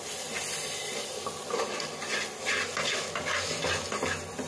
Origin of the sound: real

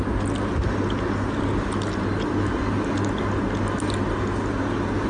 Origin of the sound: real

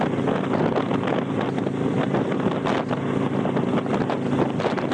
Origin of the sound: real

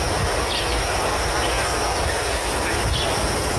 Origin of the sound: real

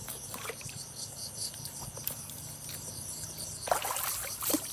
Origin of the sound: real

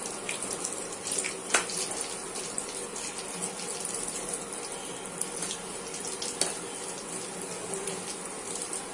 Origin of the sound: real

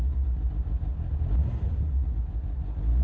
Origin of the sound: real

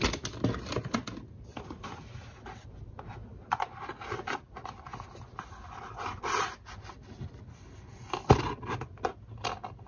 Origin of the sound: real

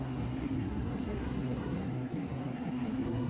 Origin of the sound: fake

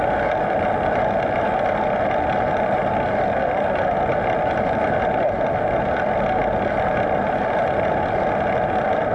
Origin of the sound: real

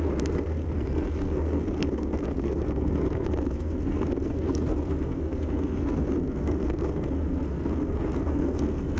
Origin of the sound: fake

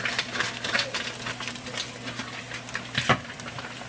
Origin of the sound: real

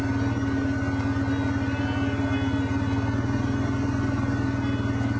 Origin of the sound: real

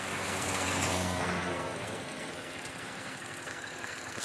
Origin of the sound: fake